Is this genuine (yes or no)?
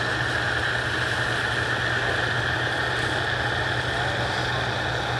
yes